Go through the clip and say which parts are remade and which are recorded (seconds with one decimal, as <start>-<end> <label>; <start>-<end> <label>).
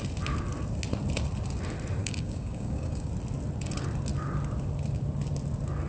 0.0-2.0 recorded; 2.0-3.1 remade; 3.1-5.9 recorded